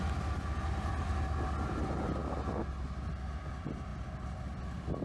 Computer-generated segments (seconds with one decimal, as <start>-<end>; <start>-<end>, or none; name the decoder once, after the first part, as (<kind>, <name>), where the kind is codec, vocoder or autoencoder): none